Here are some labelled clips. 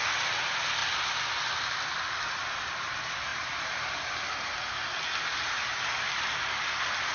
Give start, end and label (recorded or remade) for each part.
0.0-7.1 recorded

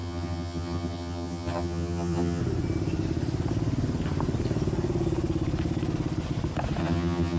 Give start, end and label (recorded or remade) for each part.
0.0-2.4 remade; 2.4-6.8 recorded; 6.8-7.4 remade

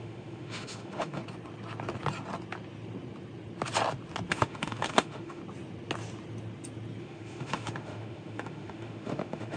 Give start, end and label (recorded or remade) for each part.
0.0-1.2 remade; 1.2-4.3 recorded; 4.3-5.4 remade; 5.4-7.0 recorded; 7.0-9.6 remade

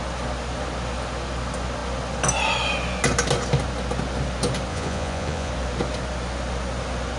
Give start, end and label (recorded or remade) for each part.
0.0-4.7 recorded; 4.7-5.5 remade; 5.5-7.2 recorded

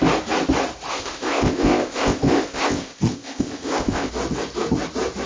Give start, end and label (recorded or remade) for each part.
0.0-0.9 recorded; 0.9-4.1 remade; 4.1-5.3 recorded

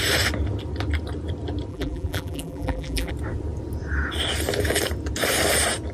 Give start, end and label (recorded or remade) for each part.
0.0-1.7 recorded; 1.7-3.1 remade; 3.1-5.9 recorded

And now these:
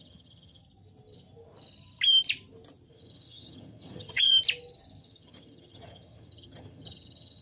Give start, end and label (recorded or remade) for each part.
0.0-0.6 remade; 0.6-2.9 recorded; 2.9-4.3 remade; 4.3-5.0 recorded; 5.0-7.4 remade

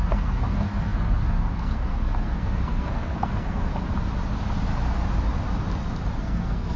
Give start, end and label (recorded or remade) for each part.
0.0-3.7 remade; 3.7-6.2 recorded; 6.2-6.8 remade